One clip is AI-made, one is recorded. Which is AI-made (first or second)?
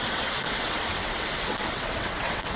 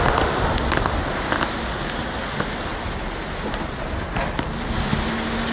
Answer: first